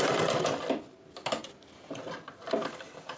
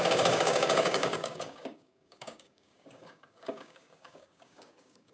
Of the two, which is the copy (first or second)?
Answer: second